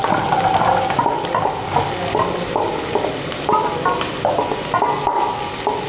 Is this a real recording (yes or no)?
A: yes